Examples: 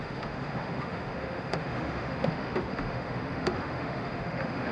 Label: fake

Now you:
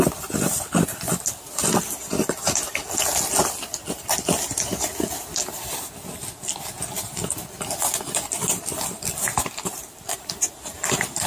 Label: real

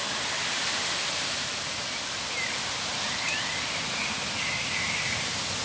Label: fake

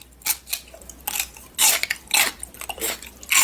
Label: real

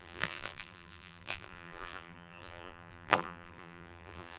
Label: fake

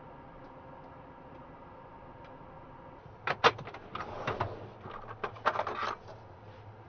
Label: real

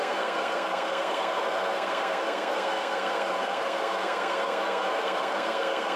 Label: fake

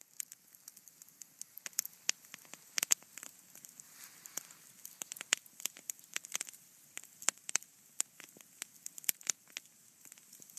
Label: real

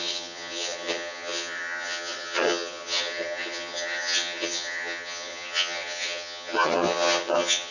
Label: fake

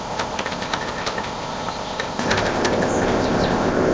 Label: fake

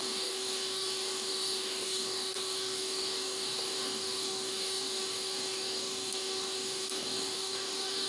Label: fake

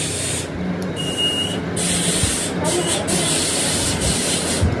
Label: real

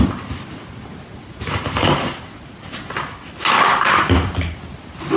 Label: real